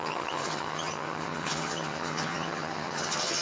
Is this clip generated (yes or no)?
yes